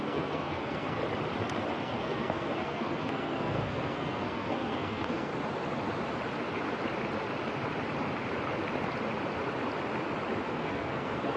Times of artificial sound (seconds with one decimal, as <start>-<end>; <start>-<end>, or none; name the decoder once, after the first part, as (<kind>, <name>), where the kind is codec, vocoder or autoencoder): 0.0-1.0 (codec, SNAC); 1.8-5.3; 10.5-11.4